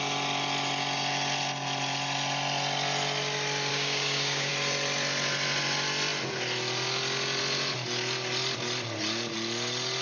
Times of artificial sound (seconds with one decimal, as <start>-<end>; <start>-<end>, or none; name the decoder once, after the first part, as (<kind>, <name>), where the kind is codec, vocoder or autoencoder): 3.7-4.5 (codec, DAC)